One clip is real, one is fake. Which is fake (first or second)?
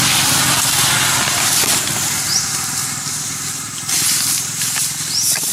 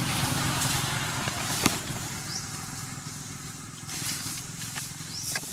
second